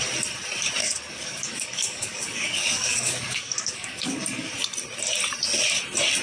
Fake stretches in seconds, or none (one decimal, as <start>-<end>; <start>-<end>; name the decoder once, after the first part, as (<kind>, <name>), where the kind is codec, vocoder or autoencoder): 0.8-4.5 (codec, DAC)